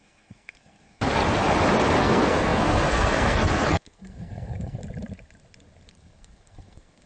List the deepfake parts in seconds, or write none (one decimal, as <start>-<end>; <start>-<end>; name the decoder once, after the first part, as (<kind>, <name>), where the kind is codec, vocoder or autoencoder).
0.0-1.2 (codec, SNAC); 2.0-4.8; 5.9-7.1